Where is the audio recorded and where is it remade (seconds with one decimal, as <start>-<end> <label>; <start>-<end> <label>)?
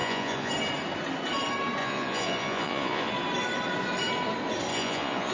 0.0-0.5 remade; 0.5-1.8 recorded; 1.8-3.1 remade; 3.1-4.7 recorded; 4.7-5.3 remade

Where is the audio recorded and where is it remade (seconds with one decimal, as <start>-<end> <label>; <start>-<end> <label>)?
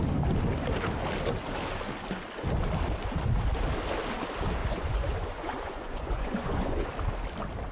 0.0-4.6 recorded; 4.6-6.9 remade; 6.9-7.7 recorded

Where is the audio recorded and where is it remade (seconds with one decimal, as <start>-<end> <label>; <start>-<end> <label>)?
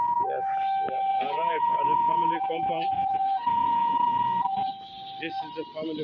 0.0-1.1 recorded; 1.1-4.7 remade; 4.7-6.0 recorded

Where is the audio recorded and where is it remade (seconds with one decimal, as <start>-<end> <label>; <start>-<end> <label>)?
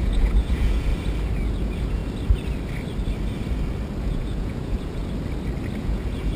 0.0-0.9 remade; 0.9-1.5 recorded; 1.5-2.0 remade; 2.0-4.0 recorded; 4.0-5.0 remade; 5.0-5.8 recorded; 5.8-6.4 remade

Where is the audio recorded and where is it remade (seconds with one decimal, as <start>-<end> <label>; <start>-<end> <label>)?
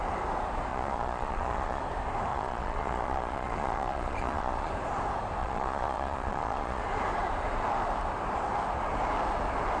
0.0-0.7 recorded; 0.7-1.8 remade; 1.8-2.3 recorded; 2.3-4.7 remade; 4.7-5.4 recorded; 5.4-6.8 remade; 6.8-9.8 recorded